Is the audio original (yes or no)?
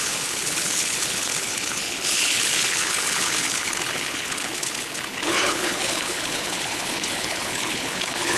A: no